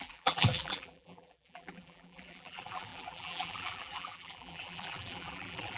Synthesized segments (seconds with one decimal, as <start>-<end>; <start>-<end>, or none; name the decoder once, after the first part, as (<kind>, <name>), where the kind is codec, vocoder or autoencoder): 0.0-5.8 (vocoder, BigVGAN v2)